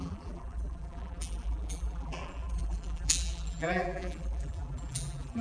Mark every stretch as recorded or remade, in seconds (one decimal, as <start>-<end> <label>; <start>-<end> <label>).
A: 0.0-5.4 remade